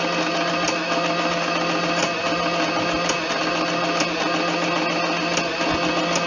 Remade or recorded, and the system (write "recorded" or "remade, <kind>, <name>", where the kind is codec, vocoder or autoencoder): recorded